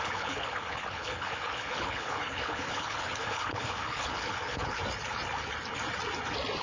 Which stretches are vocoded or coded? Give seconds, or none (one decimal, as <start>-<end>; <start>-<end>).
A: 0.0-4.8